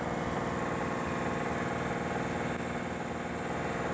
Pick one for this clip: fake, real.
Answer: real